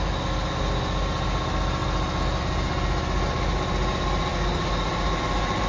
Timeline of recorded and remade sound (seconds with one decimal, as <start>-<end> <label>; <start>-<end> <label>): 0.0-5.7 recorded

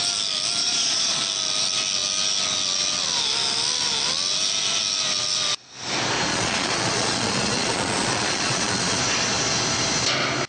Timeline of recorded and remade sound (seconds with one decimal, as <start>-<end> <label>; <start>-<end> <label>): 0.0-0.6 recorded; 0.6-1.2 remade; 1.2-6.3 recorded; 6.3-9.0 remade; 9.0-10.5 recorded

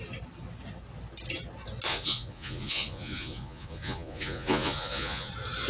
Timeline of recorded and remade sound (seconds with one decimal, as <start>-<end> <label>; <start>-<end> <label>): 0.0-1.9 recorded; 1.9-5.3 remade; 5.3-5.7 recorded

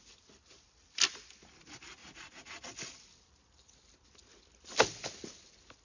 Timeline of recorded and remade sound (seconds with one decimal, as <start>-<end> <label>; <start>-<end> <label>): 0.0-2.0 recorded; 2.0-2.7 remade; 2.7-5.8 recorded

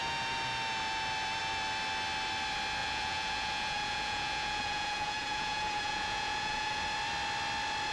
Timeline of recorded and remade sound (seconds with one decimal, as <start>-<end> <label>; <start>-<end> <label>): 0.0-2.8 recorded; 2.8-6.8 remade; 6.8-7.9 recorded

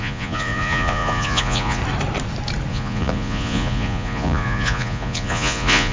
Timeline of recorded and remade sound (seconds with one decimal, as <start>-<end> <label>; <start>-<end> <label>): 0.0-1.8 remade; 1.8-2.7 recorded; 2.7-5.9 remade

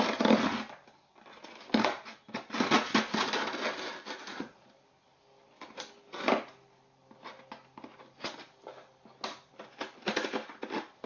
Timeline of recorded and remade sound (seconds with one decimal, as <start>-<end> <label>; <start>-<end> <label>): 0.0-4.2 recorded; 4.2-4.7 remade; 4.7-11.1 recorded

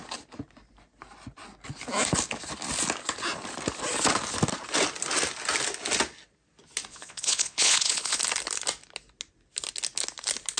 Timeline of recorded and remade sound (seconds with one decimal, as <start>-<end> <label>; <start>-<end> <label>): 0.0-6.9 recorded; 6.9-8.2 remade; 8.2-10.6 recorded